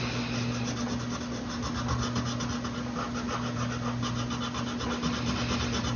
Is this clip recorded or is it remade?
recorded